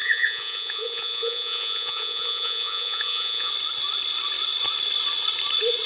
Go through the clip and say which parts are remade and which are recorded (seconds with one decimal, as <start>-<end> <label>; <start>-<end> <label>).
0.0-3.5 remade; 3.5-5.9 recorded